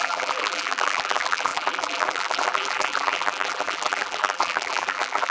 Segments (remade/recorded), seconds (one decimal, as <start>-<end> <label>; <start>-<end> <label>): 0.0-5.3 remade